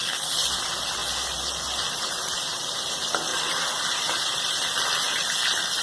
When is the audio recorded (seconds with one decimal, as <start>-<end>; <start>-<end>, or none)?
0.0-5.8